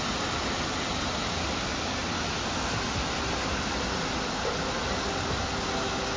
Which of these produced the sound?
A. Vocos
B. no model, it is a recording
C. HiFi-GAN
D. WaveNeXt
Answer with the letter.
B